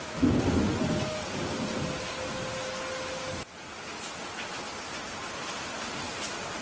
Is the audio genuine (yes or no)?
yes